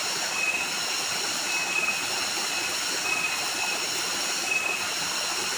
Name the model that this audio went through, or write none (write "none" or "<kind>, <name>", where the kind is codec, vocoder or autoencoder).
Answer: none